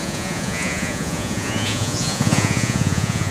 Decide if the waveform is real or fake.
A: fake